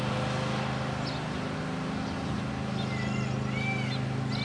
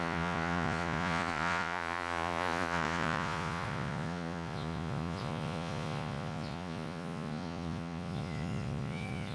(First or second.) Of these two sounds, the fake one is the second